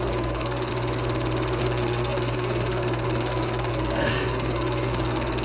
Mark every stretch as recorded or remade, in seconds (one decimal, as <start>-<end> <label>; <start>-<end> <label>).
0.0-0.7 remade; 0.7-1.6 recorded; 1.6-5.4 remade

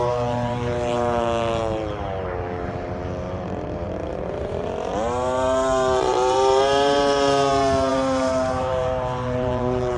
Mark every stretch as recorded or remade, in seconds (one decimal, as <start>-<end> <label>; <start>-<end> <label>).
0.0-10.0 remade

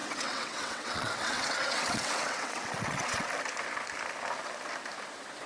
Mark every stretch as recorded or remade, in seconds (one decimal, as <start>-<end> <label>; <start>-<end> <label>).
0.0-3.3 remade; 3.3-5.5 recorded

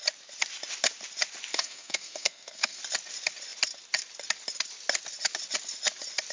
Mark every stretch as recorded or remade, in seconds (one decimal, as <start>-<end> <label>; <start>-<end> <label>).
0.0-1.5 recorded; 1.5-2.8 remade; 2.8-6.3 recorded

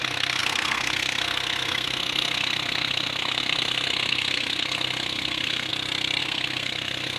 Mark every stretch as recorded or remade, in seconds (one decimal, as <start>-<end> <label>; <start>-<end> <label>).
0.0-5.7 remade; 5.7-6.2 recorded; 6.2-7.2 remade

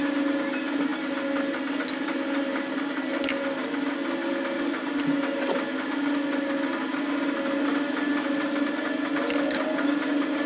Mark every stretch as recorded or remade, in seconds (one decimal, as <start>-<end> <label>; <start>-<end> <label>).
0.0-10.5 recorded

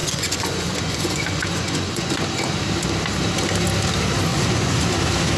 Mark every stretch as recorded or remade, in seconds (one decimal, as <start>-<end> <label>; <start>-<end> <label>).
0.0-2.1 remade; 2.1-4.3 recorded; 4.3-4.9 remade; 4.9-5.4 recorded